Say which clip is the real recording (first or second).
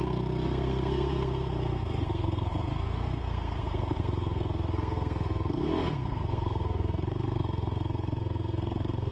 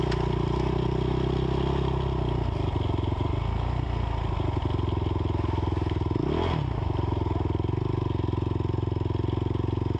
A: second